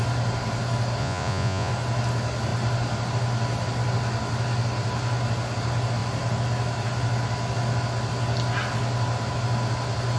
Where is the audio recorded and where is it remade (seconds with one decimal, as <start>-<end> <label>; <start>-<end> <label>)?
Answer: 0.0-1.0 recorded; 1.0-1.7 remade; 1.7-10.2 recorded